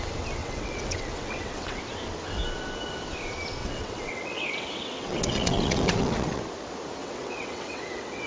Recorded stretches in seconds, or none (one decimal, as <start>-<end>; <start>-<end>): 0.0-0.4; 1.8-3.6; 6.4-7.0

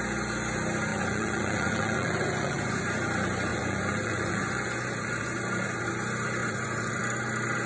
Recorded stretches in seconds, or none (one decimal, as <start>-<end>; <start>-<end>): 0.0-0.9; 2.8-3.5; 5.9-6.4; 7.0-7.7